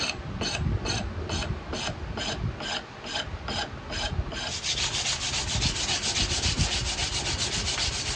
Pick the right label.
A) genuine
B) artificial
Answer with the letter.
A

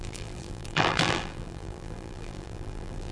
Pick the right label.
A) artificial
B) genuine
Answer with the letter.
A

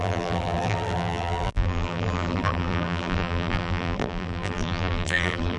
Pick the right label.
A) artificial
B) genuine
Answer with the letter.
A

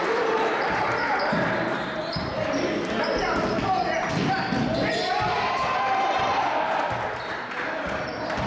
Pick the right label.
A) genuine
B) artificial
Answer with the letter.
B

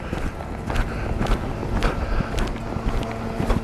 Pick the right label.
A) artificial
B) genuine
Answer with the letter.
B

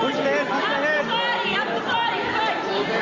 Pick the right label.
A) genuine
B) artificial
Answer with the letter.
A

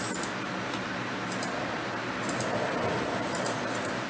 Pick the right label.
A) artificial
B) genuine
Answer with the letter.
B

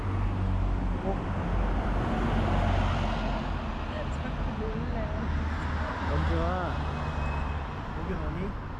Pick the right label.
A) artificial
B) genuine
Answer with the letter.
B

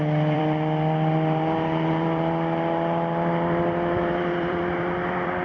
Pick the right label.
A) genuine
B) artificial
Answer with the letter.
B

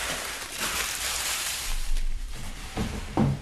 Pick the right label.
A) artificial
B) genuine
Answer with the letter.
A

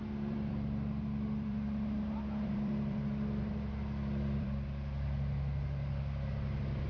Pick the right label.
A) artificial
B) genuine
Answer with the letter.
A